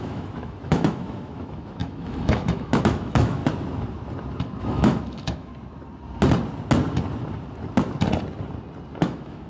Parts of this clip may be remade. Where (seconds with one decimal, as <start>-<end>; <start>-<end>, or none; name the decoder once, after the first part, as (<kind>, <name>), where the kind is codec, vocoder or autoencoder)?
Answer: 0.0-3.4 (autoencoder, DAC-VAE); 4.6-5.5; 9.0-9.5